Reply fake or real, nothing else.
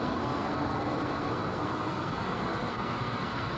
fake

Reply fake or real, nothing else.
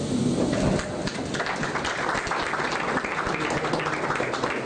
real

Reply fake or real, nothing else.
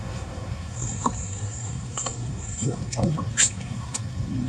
fake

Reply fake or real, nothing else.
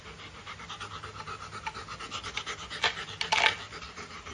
real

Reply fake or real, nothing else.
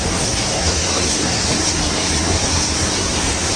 fake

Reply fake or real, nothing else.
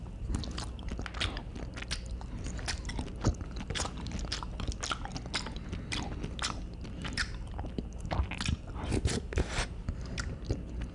real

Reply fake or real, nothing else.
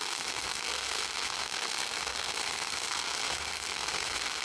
fake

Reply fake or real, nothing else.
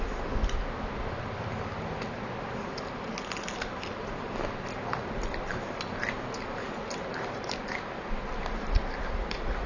real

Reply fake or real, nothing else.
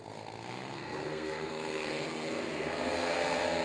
fake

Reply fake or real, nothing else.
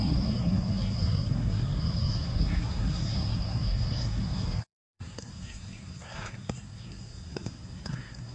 fake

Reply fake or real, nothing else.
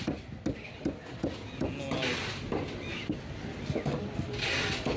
real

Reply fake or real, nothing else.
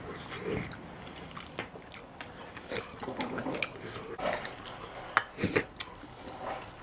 real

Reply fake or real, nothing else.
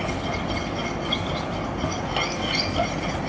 real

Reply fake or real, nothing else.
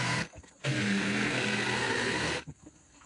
fake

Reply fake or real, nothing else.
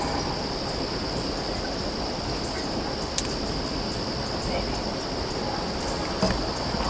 real